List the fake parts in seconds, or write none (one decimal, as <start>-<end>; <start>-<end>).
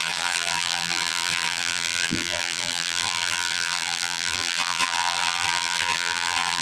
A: 0.0-6.6